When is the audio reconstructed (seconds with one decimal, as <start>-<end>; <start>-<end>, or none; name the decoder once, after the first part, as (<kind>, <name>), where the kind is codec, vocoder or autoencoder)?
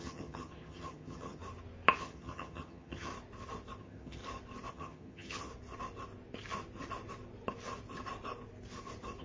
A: 0.0-1.4 (vocoder, HiFi-GAN); 2.0-3.1; 3.8-4.2; 4.7-5.5